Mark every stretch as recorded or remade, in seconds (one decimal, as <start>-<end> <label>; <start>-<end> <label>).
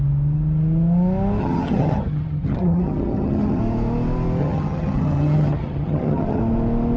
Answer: 0.0-1.4 recorded; 1.4-3.6 remade; 3.6-4.4 recorded; 4.4-6.4 remade; 6.4-7.0 recorded